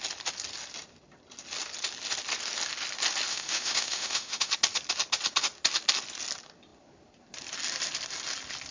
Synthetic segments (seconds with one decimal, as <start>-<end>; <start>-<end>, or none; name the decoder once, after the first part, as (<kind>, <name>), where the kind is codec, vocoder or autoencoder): 3.3-4.5 (autoencoder, DAC-VAE)